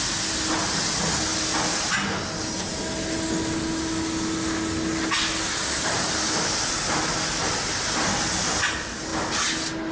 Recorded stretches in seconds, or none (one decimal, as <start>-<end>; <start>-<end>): 0.0-9.9